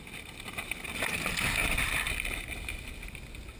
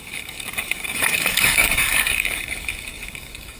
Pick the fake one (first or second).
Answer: second